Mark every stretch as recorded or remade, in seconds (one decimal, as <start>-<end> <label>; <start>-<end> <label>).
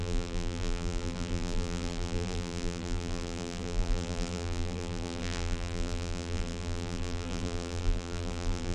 0.0-8.7 remade